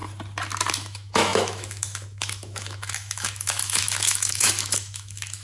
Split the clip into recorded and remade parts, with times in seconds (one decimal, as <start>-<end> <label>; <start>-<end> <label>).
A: 0.0-0.7 recorded; 0.7-5.4 remade